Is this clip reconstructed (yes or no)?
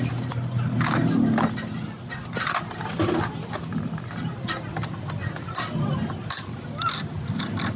no